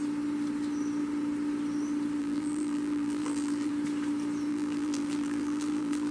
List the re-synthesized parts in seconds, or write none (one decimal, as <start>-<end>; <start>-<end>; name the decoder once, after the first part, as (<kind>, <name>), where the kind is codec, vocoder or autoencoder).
2.2-3.7 (vocoder, BigVGAN v2); 4.5-6.1